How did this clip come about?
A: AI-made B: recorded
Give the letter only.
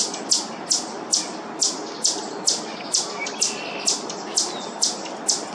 B